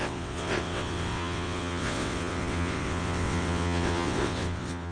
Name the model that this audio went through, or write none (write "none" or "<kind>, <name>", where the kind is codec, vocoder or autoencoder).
vocoder, WaveNeXt